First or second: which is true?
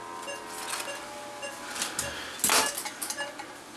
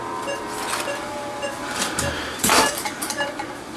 first